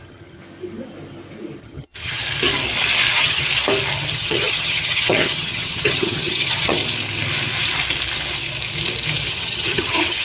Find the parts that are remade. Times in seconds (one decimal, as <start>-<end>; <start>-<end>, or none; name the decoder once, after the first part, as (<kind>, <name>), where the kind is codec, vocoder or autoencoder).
0.0-0.4 (vocoder, HiFi-GAN); 1.6-2.2; 3.1-3.5; 4.1-6.8; 9.3-10.2